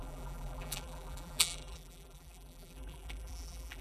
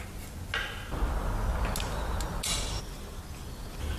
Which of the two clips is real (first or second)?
second